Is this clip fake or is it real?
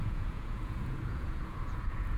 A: fake